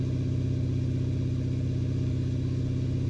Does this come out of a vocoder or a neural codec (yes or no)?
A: no